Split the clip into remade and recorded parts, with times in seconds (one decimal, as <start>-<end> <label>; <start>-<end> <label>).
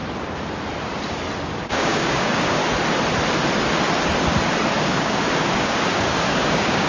0.0-1.6 recorded; 1.6-2.6 remade; 2.6-4.8 recorded; 4.8-6.9 remade